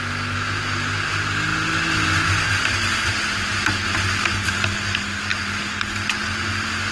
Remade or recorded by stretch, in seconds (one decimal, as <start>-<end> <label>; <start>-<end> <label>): 0.0-6.9 recorded